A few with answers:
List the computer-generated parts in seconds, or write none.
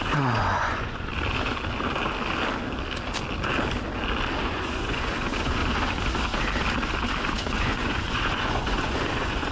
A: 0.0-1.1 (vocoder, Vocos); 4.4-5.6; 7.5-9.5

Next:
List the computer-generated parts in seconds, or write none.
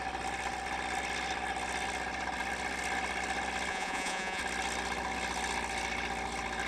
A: 3.7-4.4 (vocoder, Vocos)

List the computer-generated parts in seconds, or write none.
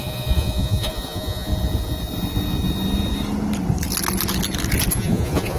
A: 0.0-1.5 (vocoder, Vocos); 4.9-5.6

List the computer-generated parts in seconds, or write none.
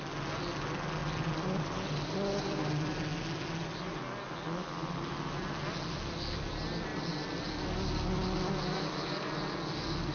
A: none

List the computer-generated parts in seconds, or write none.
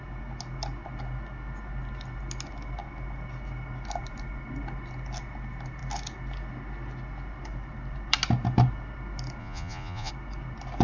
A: 9.4-10.1 (vocoder, Vocos)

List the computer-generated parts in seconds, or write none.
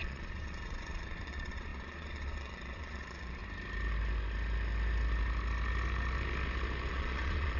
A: 0.0-3.4 (vocoder, Vocos); 6.9-7.6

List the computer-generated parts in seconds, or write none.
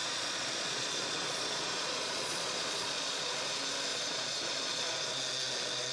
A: 0.0-3.5 (vocoder, Vocos); 3.9-5.1